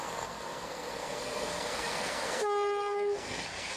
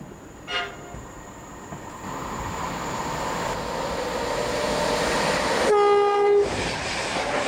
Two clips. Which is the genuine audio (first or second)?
second